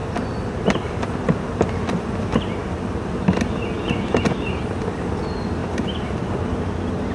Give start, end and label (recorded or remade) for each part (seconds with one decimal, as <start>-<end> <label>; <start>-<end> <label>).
0.0-1.0 remade; 1.0-7.1 recorded